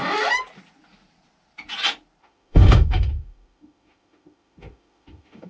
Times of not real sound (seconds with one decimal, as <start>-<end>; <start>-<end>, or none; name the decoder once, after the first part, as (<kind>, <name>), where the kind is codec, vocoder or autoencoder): 2.2-5.5 (autoencoder, DAC-VAE)